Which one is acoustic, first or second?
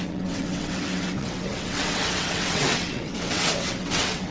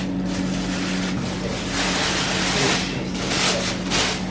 second